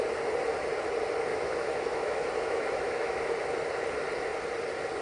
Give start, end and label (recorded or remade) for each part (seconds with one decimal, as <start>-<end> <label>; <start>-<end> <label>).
0.0-1.3 recorded; 1.3-3.3 remade; 3.3-5.0 recorded